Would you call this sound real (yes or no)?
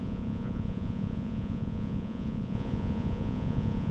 no